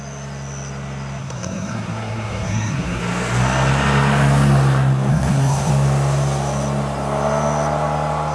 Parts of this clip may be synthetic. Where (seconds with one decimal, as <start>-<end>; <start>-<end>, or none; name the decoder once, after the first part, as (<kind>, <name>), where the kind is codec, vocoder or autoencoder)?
1.2-3.0 (codec, SNAC); 5.1-5.7